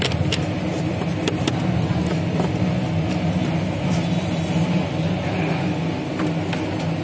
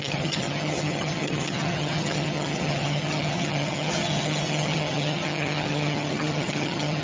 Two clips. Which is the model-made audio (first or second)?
second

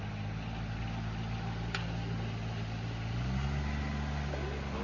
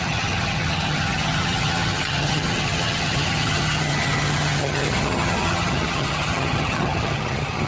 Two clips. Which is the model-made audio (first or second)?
second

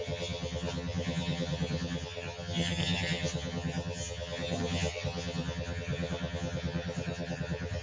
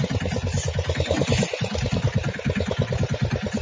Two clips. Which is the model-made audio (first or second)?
first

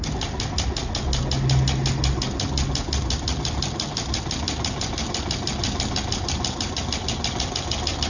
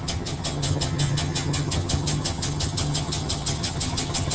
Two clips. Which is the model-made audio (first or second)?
second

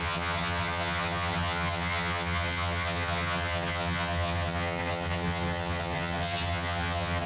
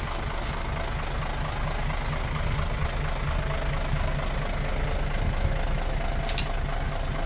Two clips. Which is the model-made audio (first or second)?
first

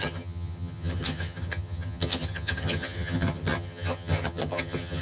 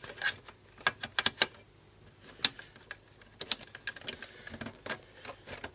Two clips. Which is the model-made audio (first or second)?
first